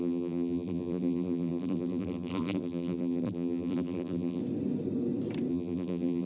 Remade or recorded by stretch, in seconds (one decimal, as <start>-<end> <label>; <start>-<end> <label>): 0.0-4.4 remade; 4.4-5.5 recorded; 5.5-6.3 remade